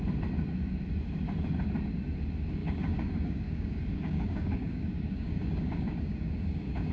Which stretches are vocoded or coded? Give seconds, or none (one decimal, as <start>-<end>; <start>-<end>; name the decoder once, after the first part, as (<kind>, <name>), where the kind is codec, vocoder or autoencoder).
2.6-6.9 (codec, DAC)

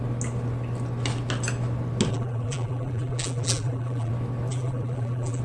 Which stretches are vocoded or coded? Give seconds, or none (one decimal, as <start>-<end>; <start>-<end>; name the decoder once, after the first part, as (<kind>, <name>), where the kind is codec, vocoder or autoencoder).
2.1-4.1 (vocoder, BigVGAN v2); 4.5-5.4

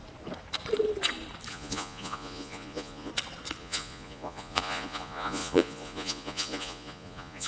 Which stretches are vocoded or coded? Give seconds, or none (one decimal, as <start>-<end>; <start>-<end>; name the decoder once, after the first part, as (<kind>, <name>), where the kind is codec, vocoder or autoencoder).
1.5-3.1 (vocoder, Vocos); 3.6-7.5

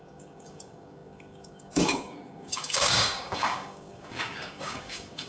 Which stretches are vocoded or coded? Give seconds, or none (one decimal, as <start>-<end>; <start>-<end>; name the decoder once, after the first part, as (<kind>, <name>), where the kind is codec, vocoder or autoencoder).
0.0-5.3 (codec, DAC)

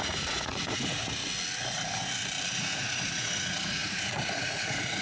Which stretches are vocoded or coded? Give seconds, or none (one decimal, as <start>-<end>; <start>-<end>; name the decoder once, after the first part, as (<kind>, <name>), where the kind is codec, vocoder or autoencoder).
0.0-1.2 (vocoder, Vocos); 2.6-5.0